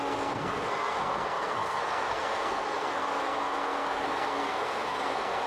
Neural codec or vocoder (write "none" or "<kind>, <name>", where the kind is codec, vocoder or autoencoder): codec, SNAC